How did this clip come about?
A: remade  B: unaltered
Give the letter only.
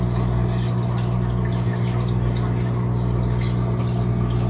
B